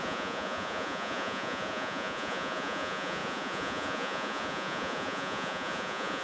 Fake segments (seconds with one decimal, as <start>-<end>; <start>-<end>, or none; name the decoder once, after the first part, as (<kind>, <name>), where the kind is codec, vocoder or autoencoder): 0.0-6.2 (vocoder, Vocos)